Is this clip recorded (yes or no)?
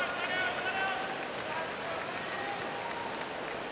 yes